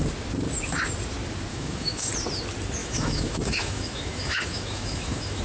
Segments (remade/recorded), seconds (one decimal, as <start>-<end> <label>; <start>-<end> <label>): 0.0-1.5 recorded; 1.5-2.1 remade; 2.1-2.8 recorded; 2.8-5.4 remade